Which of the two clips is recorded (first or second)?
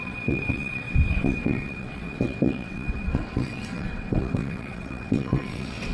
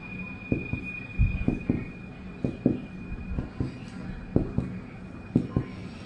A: second